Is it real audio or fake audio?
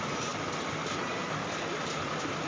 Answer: fake